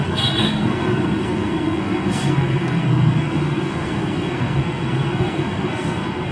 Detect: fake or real fake